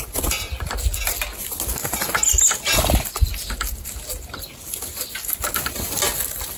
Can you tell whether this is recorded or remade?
recorded